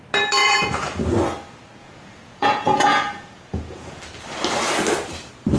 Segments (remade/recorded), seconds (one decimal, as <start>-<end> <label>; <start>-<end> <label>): 0.0-0.4 recorded; 0.4-1.0 remade; 1.0-1.8 recorded; 1.8-4.0 remade; 4.0-5.6 recorded